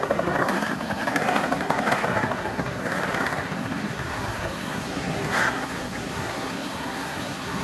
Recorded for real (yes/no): no